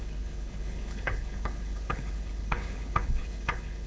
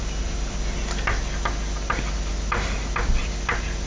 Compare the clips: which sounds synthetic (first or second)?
first